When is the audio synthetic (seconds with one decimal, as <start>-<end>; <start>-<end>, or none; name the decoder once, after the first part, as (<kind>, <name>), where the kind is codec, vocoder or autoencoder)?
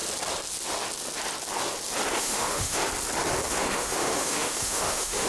2.2-2.9 (autoencoder, DAC-VAE); 3.5-5.3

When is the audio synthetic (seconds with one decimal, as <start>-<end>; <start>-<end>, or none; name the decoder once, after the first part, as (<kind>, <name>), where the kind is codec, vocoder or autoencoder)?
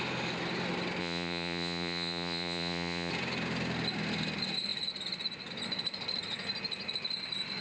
1.0-3.1 (vocoder, Vocos)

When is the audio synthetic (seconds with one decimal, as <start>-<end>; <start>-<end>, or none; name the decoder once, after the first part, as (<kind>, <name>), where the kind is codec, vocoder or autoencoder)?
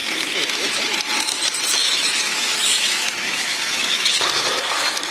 0.0-0.8 (autoencoder, DAC-VAE); 1.8-5.1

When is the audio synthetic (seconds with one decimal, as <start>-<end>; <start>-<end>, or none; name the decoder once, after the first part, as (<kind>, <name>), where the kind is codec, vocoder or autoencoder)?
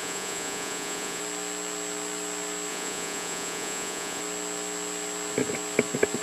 0.0-1.2 (vocoder, Vocos); 2.7-4.2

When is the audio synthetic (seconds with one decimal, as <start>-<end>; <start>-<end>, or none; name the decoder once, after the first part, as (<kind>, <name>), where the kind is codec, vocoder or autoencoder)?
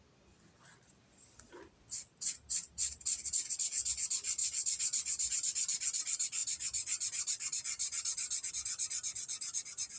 none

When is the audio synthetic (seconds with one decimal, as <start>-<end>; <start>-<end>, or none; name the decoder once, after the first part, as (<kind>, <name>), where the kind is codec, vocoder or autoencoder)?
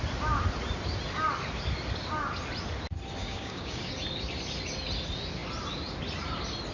3.2-3.9 (codec, DAC)